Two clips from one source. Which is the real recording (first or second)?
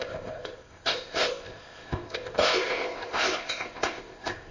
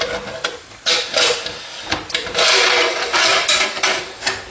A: second